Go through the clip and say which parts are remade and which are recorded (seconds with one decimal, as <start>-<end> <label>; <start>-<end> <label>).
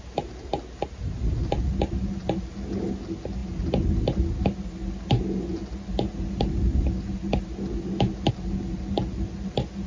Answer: 0.0-9.9 recorded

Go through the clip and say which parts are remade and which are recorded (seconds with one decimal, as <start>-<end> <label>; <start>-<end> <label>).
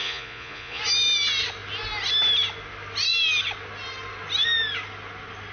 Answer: 0.0-0.8 remade; 0.8-5.5 recorded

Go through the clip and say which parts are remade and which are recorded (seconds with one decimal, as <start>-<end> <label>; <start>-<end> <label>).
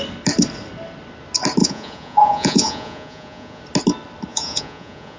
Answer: 0.0-1.6 recorded; 1.6-3.6 remade; 3.6-4.3 recorded; 4.3-5.2 remade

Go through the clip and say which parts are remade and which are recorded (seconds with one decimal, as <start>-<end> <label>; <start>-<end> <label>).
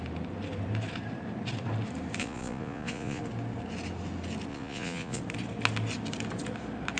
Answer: 0.0-2.2 recorded; 2.2-3.2 remade; 3.2-4.5 recorded; 4.5-5.2 remade; 5.2-7.0 recorded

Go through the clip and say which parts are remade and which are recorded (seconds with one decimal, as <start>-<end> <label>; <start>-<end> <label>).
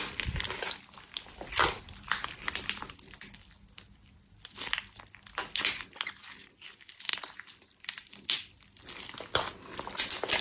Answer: 0.0-10.4 recorded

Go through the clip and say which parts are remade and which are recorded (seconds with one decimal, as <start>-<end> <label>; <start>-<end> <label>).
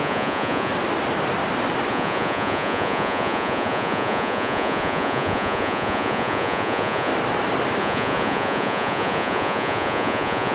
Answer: 0.0-0.7 remade; 0.7-1.9 recorded; 1.9-7.1 remade; 7.1-7.8 recorded; 7.8-10.5 remade